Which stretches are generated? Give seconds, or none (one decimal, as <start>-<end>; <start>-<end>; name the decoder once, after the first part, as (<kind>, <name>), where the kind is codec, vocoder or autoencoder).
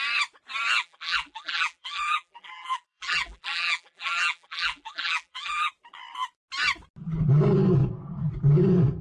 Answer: 0.8-5.7 (vocoder, BigVGAN v2)